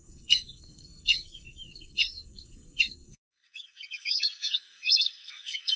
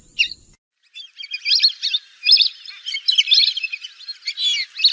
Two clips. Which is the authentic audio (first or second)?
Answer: second